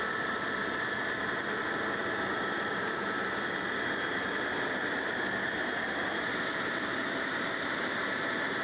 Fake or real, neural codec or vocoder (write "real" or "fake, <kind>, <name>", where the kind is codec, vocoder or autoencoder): real